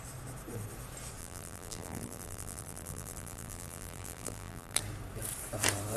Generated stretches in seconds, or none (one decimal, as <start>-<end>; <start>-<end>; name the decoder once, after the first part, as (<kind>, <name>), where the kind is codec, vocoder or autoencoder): 1.2-4.8 (vocoder, BigVGAN v2)